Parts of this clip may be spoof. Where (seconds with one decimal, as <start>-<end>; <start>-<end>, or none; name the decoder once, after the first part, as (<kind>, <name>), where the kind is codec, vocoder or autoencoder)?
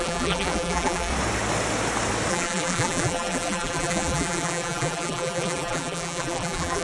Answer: 0.0-1.1 (vocoder, BigVGAN v2); 2.3-6.8